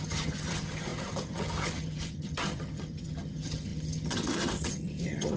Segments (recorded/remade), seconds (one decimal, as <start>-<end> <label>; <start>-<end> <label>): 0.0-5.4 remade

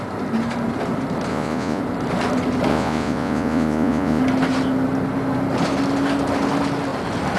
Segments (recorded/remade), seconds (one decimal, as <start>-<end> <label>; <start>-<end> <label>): 0.0-1.3 recorded; 1.3-1.8 remade; 1.8-2.7 recorded; 2.7-4.2 remade; 4.2-7.4 recorded

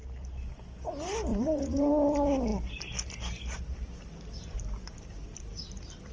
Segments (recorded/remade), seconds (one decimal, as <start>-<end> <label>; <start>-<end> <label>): 0.0-1.3 recorded; 1.3-1.9 remade; 1.9-6.1 recorded

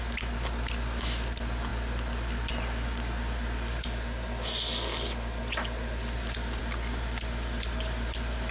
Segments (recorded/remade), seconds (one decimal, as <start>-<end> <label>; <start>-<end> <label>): 0.0-8.5 recorded